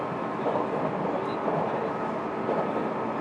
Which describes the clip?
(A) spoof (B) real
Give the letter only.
B